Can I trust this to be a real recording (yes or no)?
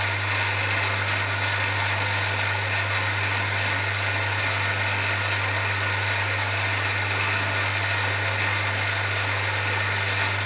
yes